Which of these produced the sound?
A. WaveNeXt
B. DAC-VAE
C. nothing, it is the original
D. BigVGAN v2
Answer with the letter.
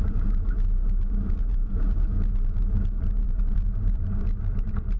D